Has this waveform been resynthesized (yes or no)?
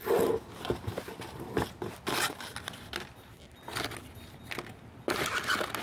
no